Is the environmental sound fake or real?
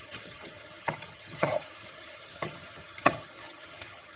fake